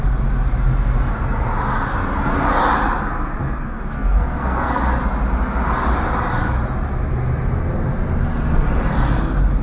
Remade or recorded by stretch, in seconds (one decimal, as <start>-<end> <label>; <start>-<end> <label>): 0.0-3.4 recorded; 3.4-4.8 remade; 4.8-9.6 recorded